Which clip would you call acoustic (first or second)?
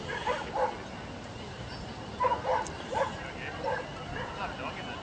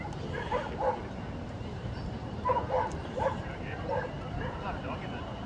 first